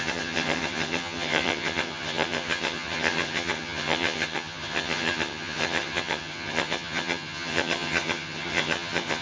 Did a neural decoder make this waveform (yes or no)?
yes